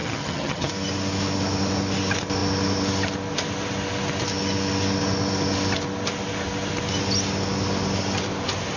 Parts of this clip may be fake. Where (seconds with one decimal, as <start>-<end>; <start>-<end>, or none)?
0.0-0.7